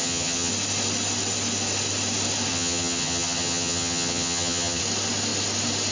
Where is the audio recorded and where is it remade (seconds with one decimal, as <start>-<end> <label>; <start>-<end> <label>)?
0.0-0.5 remade; 0.5-2.5 recorded; 2.5-4.8 remade; 4.8-5.9 recorded